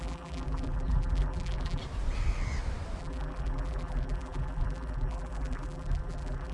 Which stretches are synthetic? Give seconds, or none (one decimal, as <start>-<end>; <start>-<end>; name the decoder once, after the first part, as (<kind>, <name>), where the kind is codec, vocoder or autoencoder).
0.0-1.8 (vocoder, BigVGAN v2); 3.0-6.5

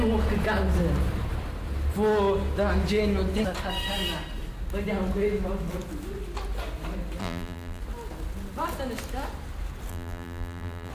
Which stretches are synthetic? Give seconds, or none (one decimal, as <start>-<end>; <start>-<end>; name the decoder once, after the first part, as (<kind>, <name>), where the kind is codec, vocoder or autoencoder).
7.2-7.8 (vocoder, BigVGAN v2); 9.9-10.9

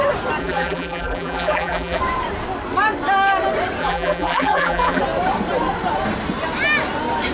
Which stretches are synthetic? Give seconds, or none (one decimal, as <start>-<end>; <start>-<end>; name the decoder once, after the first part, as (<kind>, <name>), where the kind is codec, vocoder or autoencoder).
0.4-2.0 (vocoder, BigVGAN v2); 3.8-5.0

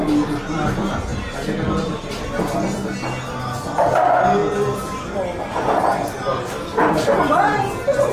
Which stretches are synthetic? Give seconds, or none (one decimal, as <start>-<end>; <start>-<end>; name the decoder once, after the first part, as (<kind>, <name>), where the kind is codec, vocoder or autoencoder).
4.4-5.8 (vocoder, BigVGAN v2); 6.3-8.1

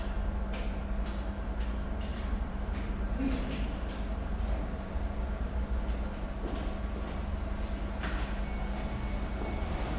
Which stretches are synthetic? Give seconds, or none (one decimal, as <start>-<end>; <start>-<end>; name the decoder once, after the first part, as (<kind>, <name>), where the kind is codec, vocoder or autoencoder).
2.1-5.5 (vocoder, BigVGAN v2)

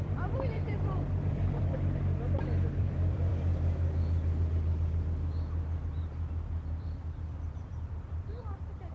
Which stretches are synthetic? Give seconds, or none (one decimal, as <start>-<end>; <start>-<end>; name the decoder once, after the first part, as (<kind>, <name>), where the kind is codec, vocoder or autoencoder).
0.0-1.7 (vocoder, BigVGAN v2); 2.8-3.3; 8.4-8.9